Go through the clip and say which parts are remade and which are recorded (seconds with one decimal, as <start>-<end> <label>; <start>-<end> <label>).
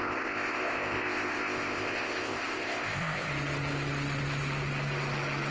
0.0-3.3 remade; 3.3-5.5 recorded